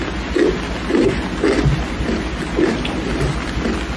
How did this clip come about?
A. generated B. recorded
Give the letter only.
B